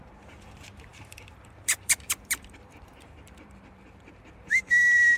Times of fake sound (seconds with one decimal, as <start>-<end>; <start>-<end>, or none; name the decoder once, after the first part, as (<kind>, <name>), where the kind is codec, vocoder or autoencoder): 0.0-5.2 (vocoder, BigVGAN v2)